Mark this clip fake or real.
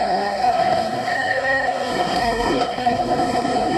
fake